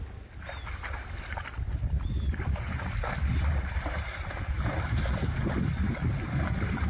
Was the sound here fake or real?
real